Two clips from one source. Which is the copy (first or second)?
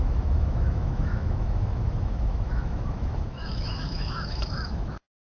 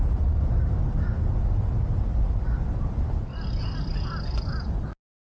first